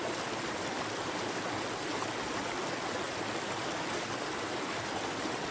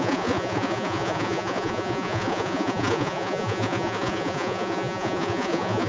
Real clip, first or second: first